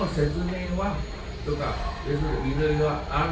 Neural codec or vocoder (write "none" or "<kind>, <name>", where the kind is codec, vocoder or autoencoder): none